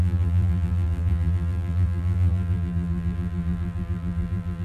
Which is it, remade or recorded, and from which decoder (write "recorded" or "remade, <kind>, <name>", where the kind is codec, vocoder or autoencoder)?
remade, vocoder, BigVGAN v2